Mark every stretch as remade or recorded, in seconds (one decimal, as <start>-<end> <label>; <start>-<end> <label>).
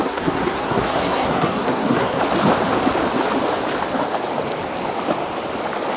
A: 0.0-2.2 remade; 2.2-6.0 recorded